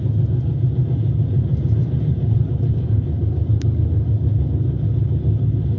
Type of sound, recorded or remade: recorded